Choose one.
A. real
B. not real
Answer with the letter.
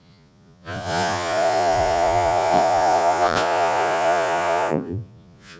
B